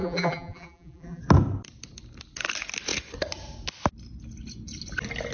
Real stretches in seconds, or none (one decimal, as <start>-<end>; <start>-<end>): 1.2-5.3